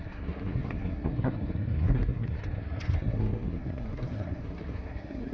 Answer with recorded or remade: remade